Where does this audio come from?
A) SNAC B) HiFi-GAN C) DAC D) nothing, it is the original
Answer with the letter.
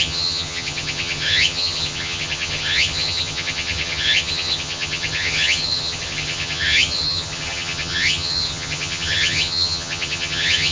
B